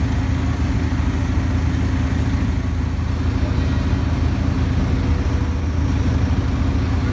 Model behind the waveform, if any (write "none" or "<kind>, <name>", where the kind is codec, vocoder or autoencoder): none